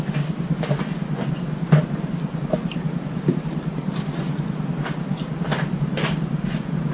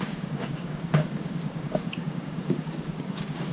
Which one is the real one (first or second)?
first